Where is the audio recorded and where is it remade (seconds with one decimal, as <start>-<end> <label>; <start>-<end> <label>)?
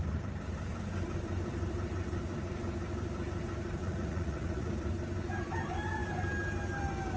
0.0-3.8 recorded; 3.8-4.7 remade; 4.7-7.2 recorded